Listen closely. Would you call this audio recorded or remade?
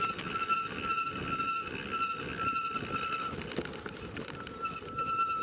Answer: recorded